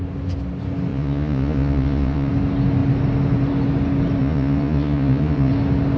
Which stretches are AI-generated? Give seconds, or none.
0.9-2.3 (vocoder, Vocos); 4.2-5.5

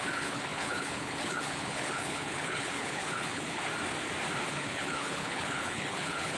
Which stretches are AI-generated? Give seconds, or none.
0.0-3.7 (codec, HILCodec); 4.5-6.4

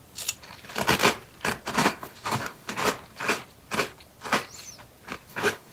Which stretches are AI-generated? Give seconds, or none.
1.7-2.8 (codec, DAC); 5.3-5.7

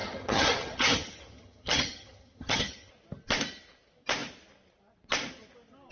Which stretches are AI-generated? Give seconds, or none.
0.0-2.9 (vocoder, HiFi-GAN)

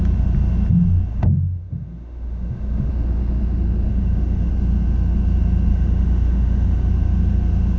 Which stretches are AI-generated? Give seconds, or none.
1.1-2.9 (autoencoder, DAC-VAE); 3.9-4.5; 5.7-6.9

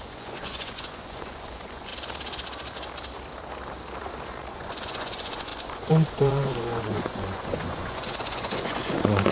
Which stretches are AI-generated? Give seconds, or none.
0.0-1.9 (vocoder, Vocos); 4.5-9.3